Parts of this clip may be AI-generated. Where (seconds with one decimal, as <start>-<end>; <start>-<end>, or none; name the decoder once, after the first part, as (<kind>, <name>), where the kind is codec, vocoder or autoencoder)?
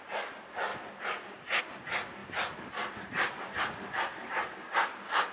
none